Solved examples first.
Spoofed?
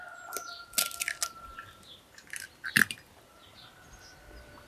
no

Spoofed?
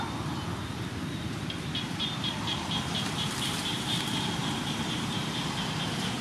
no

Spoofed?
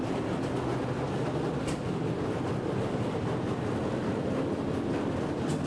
no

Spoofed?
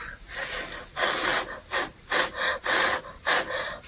no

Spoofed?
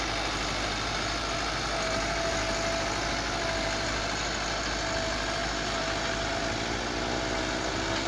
no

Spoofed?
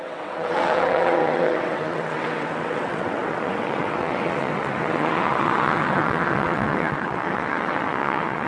yes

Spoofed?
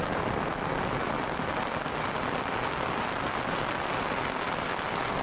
no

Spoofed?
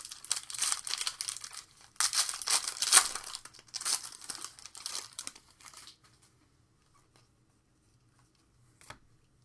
no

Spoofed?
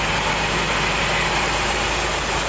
no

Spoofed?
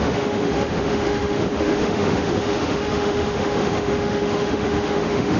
yes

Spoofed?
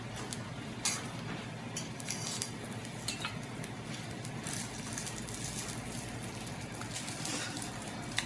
no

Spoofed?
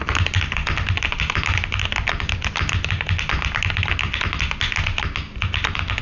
no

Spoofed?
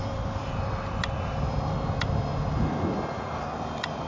yes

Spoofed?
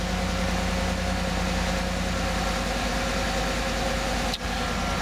no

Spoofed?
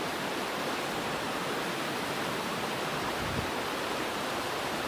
no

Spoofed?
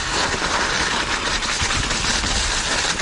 no